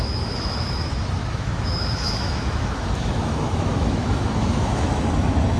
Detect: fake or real fake